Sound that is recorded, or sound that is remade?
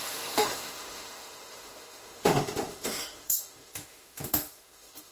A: remade